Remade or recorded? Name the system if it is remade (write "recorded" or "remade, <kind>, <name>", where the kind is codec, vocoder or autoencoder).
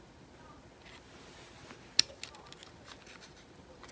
recorded